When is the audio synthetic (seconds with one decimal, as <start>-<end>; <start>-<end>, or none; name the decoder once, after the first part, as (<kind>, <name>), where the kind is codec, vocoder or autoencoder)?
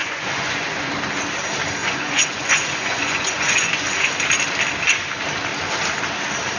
0.0-0.9 (vocoder, Vocos); 1.8-4.1